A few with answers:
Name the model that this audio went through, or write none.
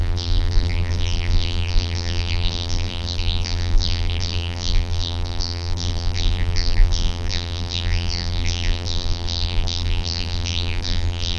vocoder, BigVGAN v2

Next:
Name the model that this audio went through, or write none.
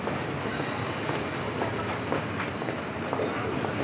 none